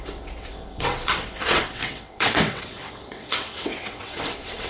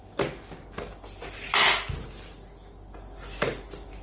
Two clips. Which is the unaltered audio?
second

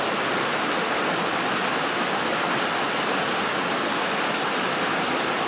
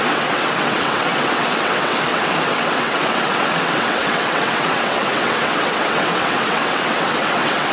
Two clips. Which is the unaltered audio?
first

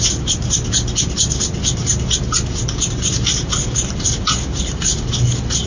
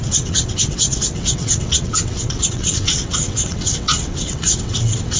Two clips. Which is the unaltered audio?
first